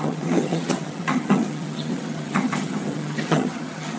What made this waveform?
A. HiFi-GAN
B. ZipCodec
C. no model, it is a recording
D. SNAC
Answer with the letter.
A